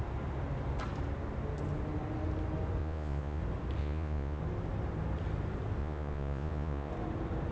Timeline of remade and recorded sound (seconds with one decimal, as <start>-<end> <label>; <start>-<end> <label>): 0.0-2.8 recorded; 2.8-3.4 remade; 3.4-3.8 recorded; 3.8-4.4 remade; 4.4-5.8 recorded; 5.8-6.9 remade; 6.9-7.5 recorded